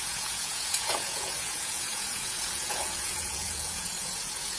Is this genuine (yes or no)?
no